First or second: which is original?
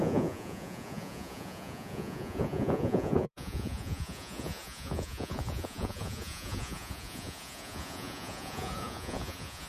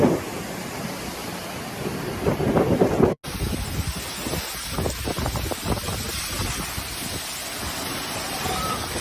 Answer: second